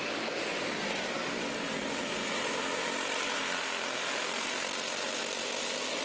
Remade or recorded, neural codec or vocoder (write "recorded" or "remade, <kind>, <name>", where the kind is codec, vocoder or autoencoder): recorded